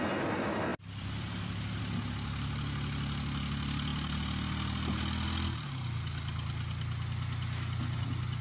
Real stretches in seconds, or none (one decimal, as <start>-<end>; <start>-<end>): 0.0-0.7; 1.8-8.4